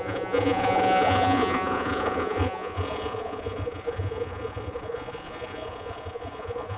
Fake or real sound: fake